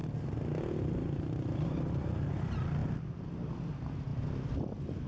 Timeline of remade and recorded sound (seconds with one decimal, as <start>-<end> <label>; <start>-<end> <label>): 0.0-5.1 recorded